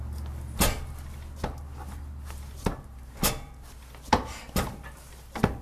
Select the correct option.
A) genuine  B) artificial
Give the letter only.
A